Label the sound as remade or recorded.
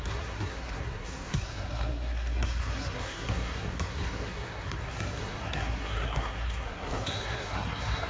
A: remade